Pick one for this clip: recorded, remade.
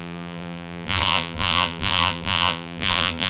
remade